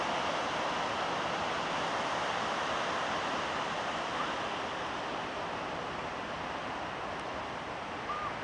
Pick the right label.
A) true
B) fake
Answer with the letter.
A